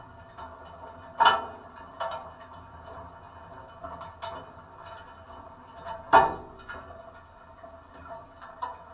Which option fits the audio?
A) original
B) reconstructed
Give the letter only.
A